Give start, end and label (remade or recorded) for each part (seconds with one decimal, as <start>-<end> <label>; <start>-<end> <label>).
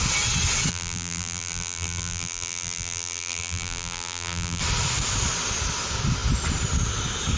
0.0-0.7 recorded; 0.7-4.6 remade; 4.6-7.4 recorded